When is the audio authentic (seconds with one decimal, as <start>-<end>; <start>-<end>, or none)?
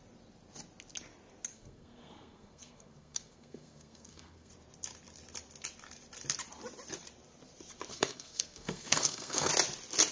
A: 0.0-1.5; 4.5-7.9; 9.5-10.1